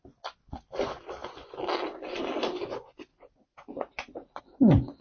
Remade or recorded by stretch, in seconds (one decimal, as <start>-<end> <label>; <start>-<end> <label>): 0.0-3.1 recorded; 3.1-4.4 remade; 4.4-5.0 recorded